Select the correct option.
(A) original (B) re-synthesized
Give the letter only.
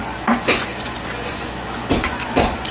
B